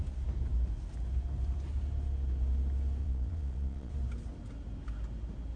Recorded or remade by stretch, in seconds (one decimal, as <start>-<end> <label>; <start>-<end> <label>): 0.0-3.0 recorded; 3.0-3.9 remade; 3.9-5.6 recorded